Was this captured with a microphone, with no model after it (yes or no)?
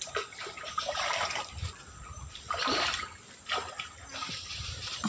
yes